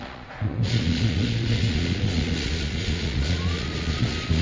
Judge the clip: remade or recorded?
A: remade